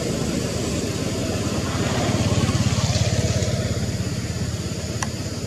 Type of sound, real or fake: real